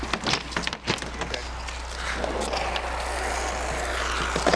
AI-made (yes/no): no